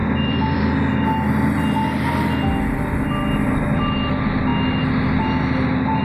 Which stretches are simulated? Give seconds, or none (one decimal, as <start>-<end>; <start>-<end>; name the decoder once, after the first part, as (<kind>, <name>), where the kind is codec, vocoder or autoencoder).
0.0-0.9 (vocoder, BigVGAN v2)